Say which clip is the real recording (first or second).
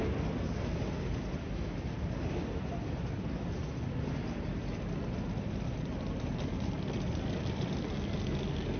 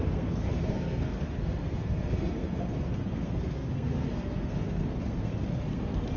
first